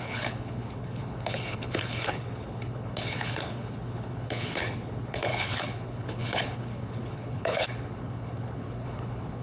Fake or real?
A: fake